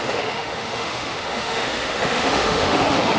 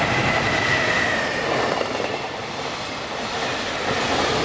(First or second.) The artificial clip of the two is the first